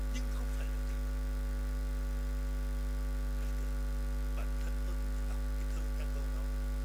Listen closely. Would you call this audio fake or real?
real